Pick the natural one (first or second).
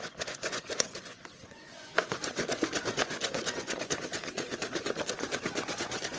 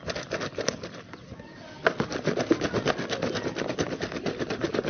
second